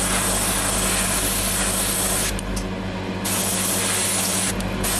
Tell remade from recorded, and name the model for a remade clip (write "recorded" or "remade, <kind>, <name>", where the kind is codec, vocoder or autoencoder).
recorded